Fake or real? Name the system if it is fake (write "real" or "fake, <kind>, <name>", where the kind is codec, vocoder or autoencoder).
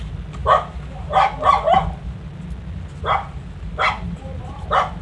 real